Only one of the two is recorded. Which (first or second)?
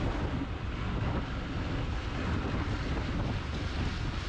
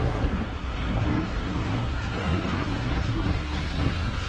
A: first